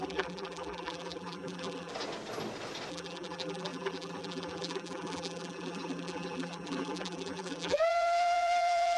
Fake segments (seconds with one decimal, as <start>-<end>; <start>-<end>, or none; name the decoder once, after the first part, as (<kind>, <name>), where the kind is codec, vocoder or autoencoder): 0.0-1.9 (vocoder, BigVGAN v2); 2.9-9.0